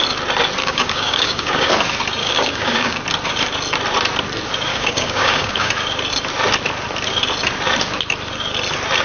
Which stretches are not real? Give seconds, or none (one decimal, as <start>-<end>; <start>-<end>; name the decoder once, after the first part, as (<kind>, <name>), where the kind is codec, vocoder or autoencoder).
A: 0.6-1.7 (codec, DAC); 2.2-3.0; 4.7-5.7